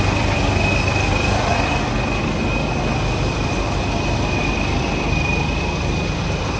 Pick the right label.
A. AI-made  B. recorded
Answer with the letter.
B